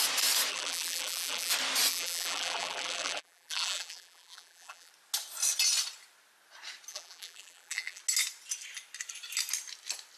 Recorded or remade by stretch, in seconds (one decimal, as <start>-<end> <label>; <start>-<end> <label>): 0.0-0.5 recorded; 0.5-1.5 remade; 1.5-1.9 recorded; 1.9-4.9 remade; 4.9-6.9 recorded; 6.9-8.0 remade; 8.0-10.2 recorded